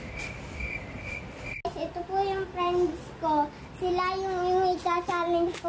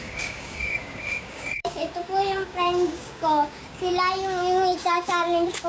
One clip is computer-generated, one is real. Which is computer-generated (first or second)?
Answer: second